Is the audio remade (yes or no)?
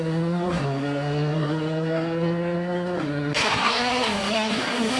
yes